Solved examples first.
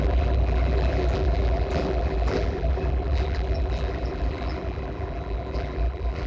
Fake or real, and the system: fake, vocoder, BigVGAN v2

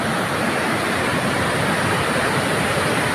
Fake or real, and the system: fake, vocoder, BigVGAN v2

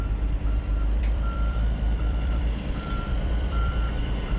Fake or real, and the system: fake, vocoder, BigVGAN v2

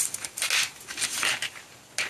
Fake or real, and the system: real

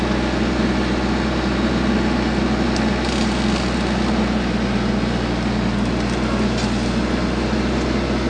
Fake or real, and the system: real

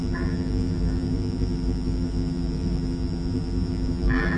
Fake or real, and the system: fake, vocoder, BigVGAN v2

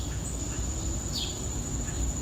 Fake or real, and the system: real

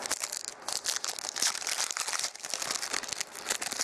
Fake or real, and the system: real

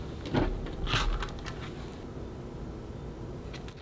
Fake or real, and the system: real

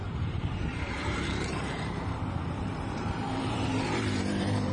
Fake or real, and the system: fake, vocoder, BigVGAN v2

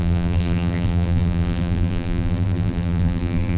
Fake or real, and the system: fake, vocoder, BigVGAN v2